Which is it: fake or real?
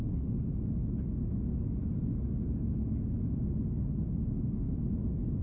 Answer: real